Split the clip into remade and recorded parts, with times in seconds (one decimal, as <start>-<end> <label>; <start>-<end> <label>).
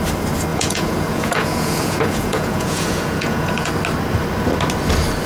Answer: 0.0-0.5 recorded; 0.5-3.7 remade; 3.7-5.3 recorded